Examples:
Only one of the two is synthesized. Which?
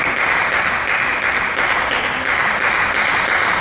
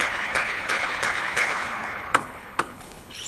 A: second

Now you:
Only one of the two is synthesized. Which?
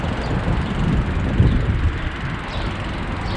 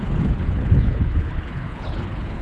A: second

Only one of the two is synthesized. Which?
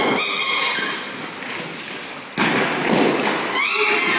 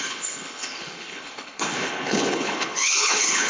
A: second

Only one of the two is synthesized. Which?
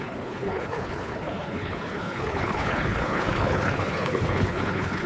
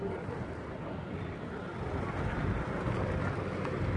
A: first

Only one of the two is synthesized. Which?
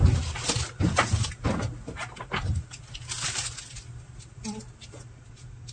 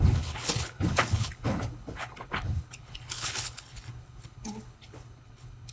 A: second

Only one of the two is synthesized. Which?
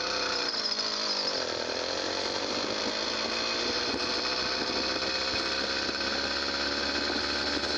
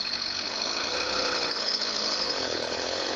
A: second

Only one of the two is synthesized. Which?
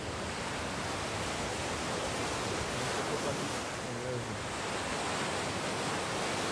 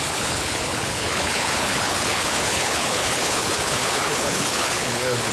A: second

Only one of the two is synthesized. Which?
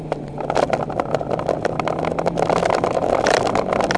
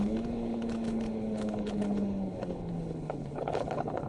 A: second